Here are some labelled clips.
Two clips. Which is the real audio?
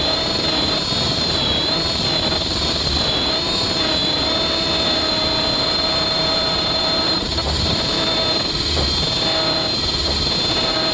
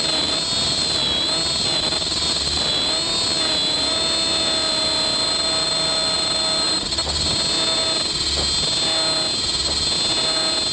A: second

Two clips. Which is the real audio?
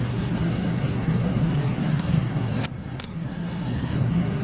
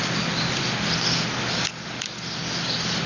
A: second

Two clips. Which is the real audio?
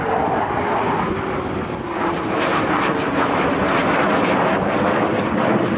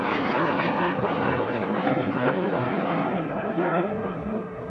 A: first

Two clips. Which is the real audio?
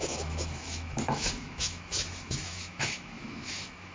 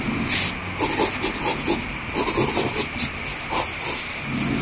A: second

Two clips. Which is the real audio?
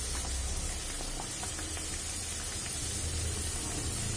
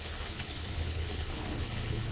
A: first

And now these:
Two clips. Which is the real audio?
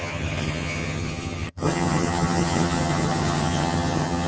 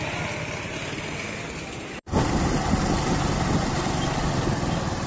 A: second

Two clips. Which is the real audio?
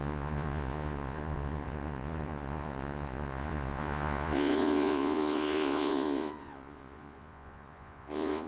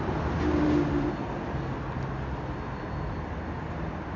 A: second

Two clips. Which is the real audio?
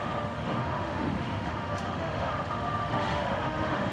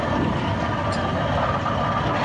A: second